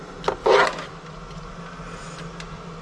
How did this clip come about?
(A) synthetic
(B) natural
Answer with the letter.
B